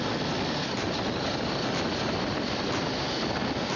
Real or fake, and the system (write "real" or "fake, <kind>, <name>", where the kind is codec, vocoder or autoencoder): real